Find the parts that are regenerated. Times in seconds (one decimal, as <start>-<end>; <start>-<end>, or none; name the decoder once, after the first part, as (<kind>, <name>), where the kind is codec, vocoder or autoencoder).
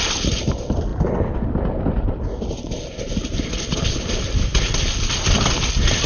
none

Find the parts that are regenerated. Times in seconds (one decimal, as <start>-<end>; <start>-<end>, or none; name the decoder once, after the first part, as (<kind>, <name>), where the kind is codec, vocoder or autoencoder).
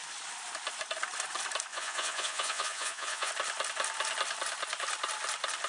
1.7-3.3 (vocoder, Vocos)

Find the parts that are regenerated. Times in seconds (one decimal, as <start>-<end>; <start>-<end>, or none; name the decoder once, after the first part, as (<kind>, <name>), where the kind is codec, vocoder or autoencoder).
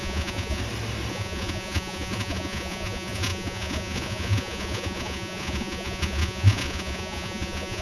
0.0-0.6 (vocoder, Vocos); 1.1-7.8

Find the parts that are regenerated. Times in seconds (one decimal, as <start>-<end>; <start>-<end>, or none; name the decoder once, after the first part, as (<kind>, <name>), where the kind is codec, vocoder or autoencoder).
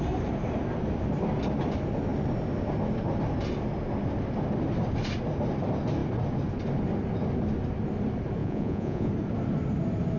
8.4-9.1 (vocoder, Vocos)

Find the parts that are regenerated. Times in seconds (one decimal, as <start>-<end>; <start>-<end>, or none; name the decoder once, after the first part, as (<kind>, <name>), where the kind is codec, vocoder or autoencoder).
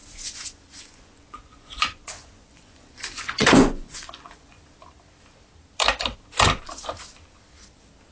0.0-4.6 (vocoder, Vocos)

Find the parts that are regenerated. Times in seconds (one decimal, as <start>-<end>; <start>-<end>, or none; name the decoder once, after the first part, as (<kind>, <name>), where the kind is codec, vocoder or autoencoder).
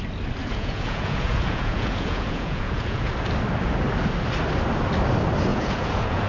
0.4-3.1 (vocoder, Vocos); 5.5-6.3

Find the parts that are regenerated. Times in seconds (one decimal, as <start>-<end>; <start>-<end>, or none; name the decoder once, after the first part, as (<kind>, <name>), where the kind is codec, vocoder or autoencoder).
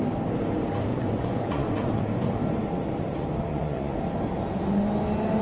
0.9-2.3 (vocoder, Vocos); 3.5-4.0